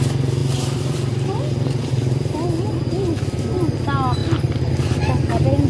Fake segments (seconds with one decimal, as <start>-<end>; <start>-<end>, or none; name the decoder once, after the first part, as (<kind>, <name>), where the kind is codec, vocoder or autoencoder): none